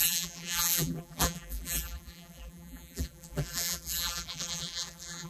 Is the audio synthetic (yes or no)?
yes